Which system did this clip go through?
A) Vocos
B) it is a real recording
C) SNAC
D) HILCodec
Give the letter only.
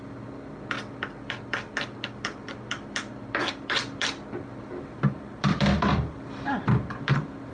B